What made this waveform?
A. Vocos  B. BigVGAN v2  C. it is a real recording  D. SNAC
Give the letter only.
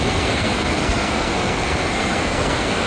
D